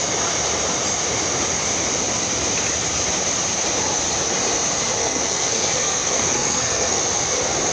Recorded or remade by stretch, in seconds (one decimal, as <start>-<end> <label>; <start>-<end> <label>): 0.0-5.0 recorded; 5.0-7.0 remade; 7.0-7.7 recorded